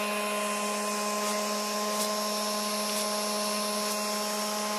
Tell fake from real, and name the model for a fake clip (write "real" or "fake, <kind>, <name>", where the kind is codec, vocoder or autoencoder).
real